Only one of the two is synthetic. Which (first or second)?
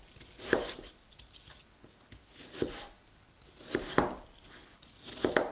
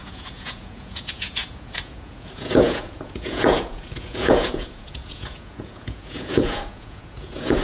second